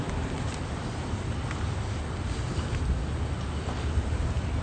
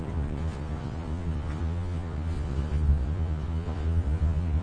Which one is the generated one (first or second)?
second